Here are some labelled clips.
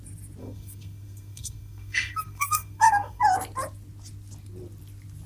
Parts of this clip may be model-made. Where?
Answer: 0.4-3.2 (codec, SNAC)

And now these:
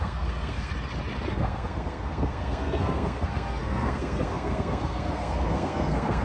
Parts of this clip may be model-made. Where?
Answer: 0.0-0.7 (codec, SNAC); 1.3-6.2

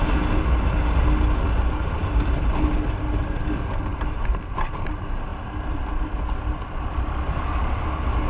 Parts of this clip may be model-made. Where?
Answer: none

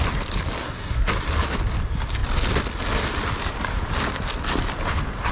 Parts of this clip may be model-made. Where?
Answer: 0.6-1.1 (codec, SNAC)

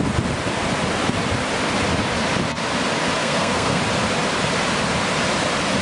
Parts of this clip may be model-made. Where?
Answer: 3.2-3.8 (codec, SNAC)

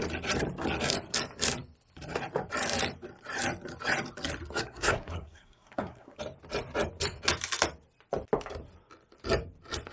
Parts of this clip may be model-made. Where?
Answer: 4.6-6.2 (codec, SNAC)